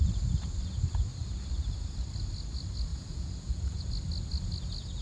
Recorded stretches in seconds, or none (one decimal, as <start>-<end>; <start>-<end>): 0.0-2.9; 3.9-5.0